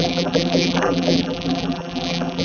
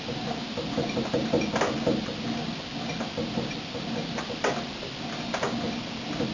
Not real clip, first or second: first